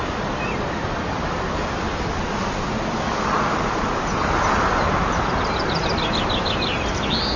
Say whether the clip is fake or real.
real